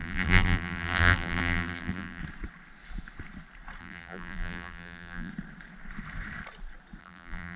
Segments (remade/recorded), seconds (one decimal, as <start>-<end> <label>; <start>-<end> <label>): 0.0-2.2 remade; 2.2-3.8 recorded; 3.8-5.3 remade; 5.3-7.0 recorded; 7.0-7.6 remade